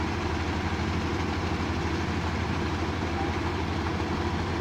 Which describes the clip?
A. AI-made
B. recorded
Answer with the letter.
B